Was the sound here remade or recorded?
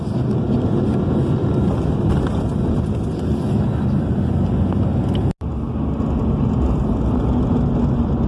recorded